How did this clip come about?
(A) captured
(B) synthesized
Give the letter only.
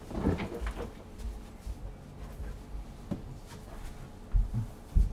A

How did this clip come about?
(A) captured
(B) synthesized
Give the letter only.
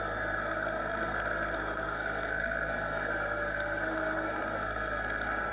B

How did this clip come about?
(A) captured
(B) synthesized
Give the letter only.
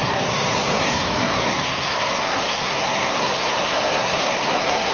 B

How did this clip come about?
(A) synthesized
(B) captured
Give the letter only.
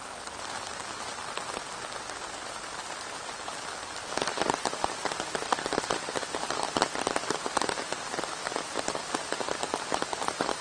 B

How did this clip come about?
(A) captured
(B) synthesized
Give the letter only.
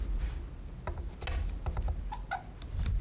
A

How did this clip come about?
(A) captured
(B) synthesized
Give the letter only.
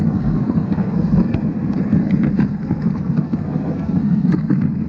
B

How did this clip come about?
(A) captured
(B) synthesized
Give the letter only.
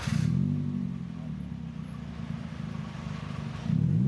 A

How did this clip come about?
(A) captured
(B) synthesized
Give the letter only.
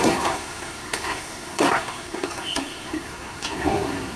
B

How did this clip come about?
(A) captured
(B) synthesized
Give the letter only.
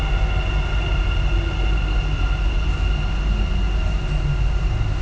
A